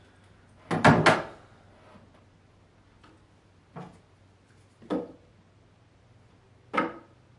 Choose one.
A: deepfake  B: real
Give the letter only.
B